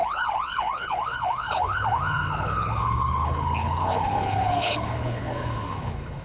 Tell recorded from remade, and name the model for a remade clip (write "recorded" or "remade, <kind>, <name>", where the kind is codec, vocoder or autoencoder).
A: remade, codec, HILCodec